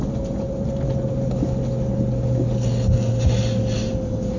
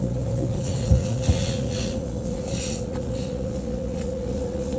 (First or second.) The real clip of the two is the first